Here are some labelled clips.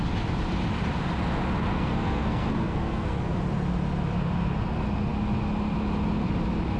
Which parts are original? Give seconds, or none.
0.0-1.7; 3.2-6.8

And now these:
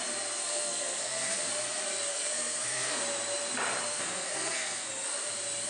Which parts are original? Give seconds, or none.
0.0-0.4; 1.5-2.1; 3.0-3.9; 4.9-5.7